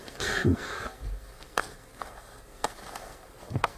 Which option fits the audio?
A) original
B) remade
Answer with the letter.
B